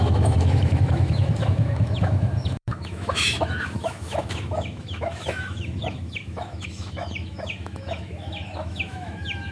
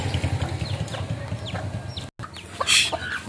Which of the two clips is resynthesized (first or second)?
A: first